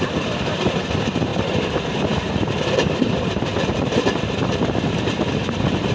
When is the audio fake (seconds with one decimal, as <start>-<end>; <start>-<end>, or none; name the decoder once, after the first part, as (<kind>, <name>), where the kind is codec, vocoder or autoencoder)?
0.0-5.9 (vocoder, BigVGAN v2)

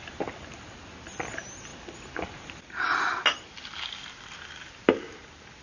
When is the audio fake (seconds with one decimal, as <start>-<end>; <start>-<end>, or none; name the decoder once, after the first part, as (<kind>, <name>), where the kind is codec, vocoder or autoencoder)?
none

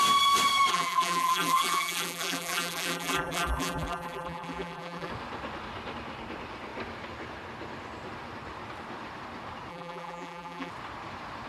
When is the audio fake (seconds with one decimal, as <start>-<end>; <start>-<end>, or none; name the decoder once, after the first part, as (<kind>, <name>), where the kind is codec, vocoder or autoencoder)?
0.7-5.1 (vocoder, BigVGAN v2); 9.7-10.7

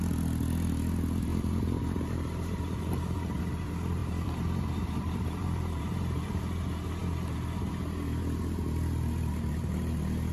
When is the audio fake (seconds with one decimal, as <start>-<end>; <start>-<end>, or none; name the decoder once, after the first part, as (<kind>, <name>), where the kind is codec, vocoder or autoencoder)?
1.3-3.4 (vocoder, BigVGAN v2); 4.0-6.4

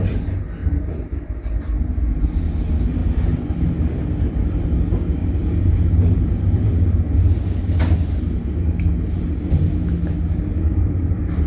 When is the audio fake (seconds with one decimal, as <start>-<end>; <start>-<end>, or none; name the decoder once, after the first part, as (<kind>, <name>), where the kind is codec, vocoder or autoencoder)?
0.6-2.1 (vocoder, BigVGAN v2); 5.2-6.7; 8.6-11.5